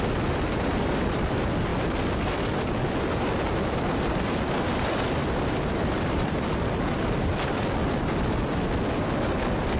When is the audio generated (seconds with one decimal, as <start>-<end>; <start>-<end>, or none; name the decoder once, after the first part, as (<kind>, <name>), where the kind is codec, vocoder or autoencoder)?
0.0-1.7 (vocoder, BigVGAN v2); 3.7-9.8